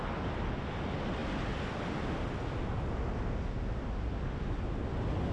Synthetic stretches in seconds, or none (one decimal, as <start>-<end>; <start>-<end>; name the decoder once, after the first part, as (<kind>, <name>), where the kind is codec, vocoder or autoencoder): none